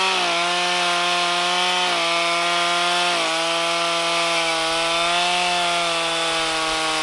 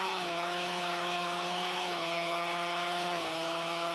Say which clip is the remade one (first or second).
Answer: second